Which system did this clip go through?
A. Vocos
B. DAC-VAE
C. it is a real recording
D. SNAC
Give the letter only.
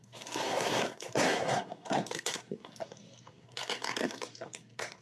D